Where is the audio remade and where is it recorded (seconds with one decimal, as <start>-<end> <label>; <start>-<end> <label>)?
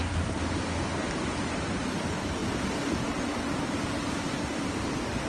0.0-5.3 recorded